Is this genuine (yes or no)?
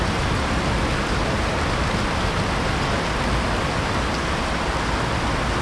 yes